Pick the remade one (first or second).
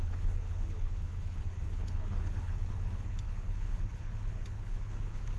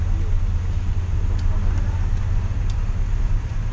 first